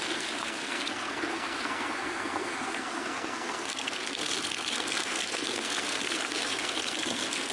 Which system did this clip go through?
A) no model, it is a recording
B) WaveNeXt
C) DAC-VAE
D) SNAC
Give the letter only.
D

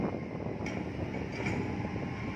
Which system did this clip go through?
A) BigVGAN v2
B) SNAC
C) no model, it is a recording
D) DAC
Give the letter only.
C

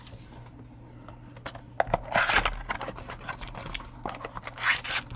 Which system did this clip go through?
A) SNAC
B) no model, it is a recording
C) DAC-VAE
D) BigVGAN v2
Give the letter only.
B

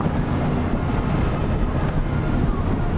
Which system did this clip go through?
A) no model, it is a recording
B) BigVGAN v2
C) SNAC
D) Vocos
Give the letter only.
A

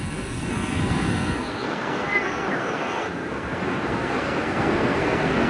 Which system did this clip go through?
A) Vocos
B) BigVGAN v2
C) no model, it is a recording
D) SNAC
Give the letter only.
D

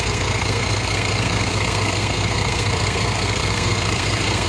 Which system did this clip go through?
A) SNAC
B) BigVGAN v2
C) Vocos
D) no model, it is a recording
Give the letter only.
A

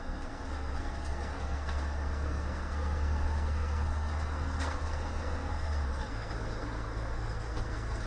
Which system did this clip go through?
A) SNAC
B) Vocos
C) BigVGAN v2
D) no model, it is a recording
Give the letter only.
A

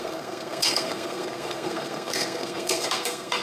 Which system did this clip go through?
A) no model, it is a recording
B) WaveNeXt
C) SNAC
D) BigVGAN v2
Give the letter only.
C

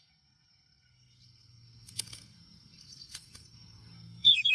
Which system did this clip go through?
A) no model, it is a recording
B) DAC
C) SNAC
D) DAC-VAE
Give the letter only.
C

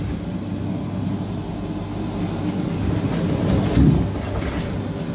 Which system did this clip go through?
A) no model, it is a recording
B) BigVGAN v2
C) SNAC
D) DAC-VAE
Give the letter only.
A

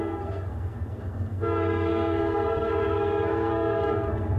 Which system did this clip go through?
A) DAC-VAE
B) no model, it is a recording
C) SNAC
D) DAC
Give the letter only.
C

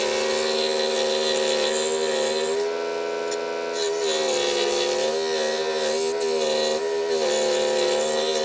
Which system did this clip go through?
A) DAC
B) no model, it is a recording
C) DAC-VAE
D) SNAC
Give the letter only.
B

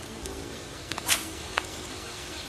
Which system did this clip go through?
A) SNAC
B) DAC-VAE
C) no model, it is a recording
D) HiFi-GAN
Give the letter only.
A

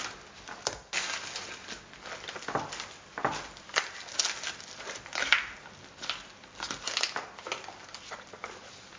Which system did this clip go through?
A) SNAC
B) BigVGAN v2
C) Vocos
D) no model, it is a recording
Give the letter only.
D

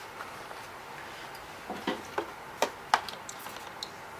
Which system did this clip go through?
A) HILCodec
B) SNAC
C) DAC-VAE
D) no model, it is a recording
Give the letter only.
D